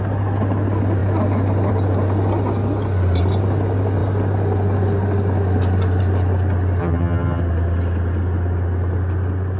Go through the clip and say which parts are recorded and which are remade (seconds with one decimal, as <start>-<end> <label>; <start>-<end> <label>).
0.0-6.8 recorded; 6.8-7.4 remade; 7.4-9.6 recorded